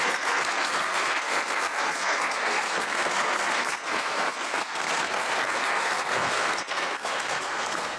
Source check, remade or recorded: remade